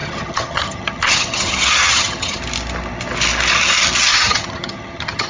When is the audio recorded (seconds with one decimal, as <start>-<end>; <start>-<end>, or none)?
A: 2.4-4.1